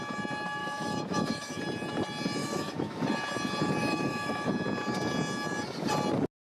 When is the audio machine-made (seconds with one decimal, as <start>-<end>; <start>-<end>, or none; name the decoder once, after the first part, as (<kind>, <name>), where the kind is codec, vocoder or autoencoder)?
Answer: 0.6-1.6 (autoencoder, DAC-VAE); 2.4-3.0; 3.8-4.5